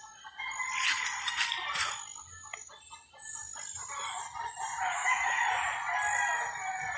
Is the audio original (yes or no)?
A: yes